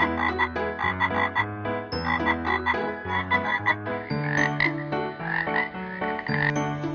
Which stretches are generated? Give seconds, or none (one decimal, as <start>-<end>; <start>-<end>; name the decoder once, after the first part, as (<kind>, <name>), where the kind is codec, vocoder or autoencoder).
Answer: 2.8-3.9 (codec, SNAC)